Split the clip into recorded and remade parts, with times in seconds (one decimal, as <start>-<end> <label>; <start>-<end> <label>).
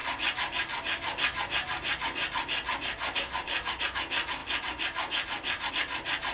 0.0-6.3 recorded